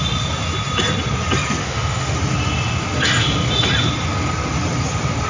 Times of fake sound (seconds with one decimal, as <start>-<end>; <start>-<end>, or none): 1.6-2.2